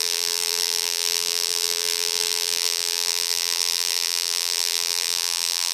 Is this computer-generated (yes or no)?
yes